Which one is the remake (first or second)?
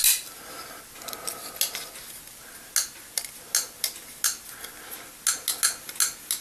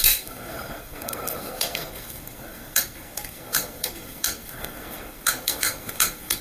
second